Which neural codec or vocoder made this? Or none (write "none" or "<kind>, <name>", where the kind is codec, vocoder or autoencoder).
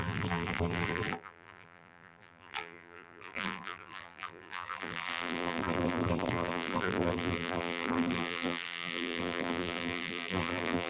vocoder, BigVGAN v2